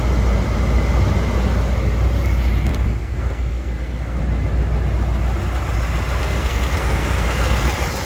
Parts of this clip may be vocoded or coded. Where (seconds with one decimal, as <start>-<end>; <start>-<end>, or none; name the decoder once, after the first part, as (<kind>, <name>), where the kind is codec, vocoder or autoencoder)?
2.7-4.2 (codec, SNAC); 6.2-7.6